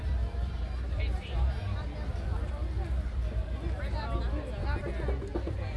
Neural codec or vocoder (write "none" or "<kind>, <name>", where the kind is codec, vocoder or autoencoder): none